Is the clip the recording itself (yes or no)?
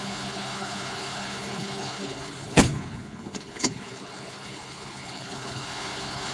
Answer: no